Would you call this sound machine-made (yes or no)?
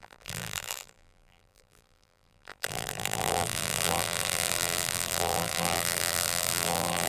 yes